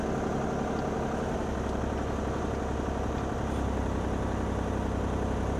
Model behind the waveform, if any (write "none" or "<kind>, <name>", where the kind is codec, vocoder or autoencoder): none